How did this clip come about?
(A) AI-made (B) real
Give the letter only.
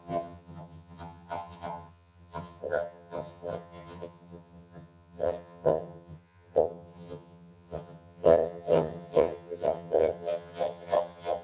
A